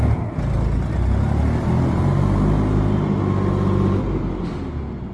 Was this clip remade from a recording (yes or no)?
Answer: no